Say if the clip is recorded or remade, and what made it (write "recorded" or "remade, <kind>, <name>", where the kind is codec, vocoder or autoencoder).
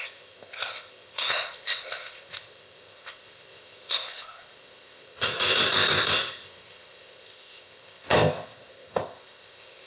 remade, codec, ZipCodec